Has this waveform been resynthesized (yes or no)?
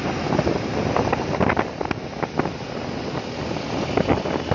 no